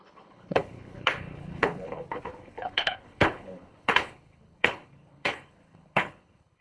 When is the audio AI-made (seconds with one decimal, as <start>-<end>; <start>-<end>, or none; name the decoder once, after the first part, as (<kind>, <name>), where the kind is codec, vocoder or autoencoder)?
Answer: 0.0-6.6 (codec, HILCodec)